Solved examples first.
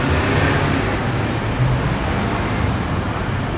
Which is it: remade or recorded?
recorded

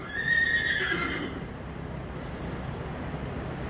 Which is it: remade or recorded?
recorded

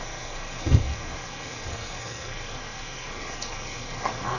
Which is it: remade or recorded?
remade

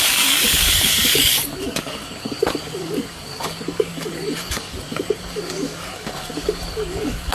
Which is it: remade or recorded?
remade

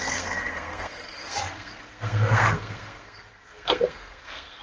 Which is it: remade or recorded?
remade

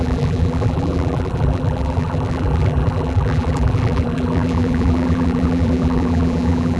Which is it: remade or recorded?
remade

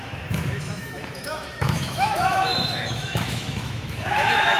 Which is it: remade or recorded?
remade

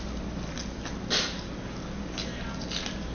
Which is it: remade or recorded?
recorded